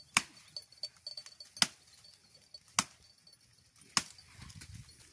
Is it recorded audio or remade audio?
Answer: recorded